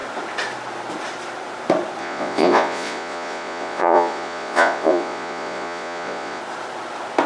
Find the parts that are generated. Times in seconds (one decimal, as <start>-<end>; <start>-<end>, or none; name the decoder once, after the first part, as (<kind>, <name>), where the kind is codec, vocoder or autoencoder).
2.0-6.4 (vocoder, Vocos)